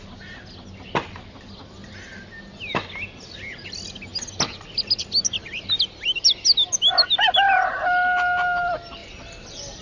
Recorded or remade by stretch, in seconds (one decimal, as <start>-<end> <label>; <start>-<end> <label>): 0.0-9.8 recorded